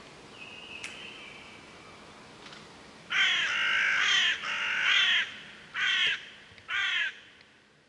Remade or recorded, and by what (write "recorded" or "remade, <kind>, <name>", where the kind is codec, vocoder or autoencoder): recorded